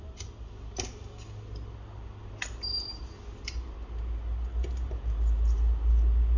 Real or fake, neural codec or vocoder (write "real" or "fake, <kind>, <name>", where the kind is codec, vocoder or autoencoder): real